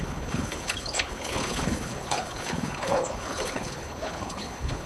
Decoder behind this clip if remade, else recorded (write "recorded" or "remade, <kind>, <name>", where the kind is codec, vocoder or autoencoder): remade, codec, HILCodec